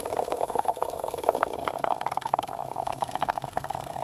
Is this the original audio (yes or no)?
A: no